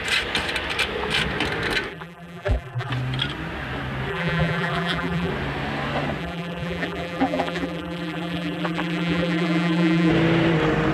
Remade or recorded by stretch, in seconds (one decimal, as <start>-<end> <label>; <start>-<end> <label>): 0.0-1.9 recorded; 1.9-2.9 remade; 2.9-4.1 recorded; 4.1-5.3 remade; 5.3-6.2 recorded; 6.2-10.1 remade; 10.1-10.9 recorded